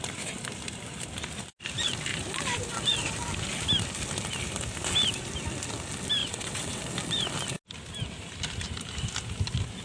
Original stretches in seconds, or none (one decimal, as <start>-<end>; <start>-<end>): 0.0-6.2; 6.8-9.8